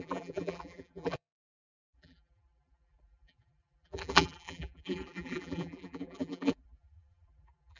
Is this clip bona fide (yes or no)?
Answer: no